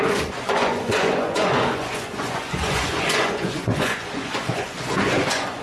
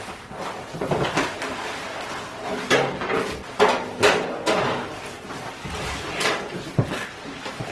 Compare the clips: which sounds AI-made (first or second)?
first